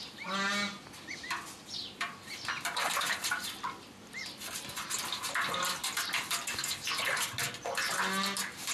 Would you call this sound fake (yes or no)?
no